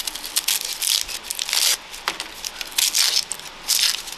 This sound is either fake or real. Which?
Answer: real